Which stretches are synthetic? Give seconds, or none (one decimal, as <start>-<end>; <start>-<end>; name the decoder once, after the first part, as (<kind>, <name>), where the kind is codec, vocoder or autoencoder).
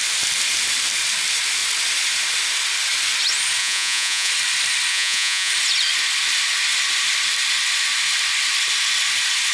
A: 3.6-4.3 (vocoder, Vocos); 4.9-5.5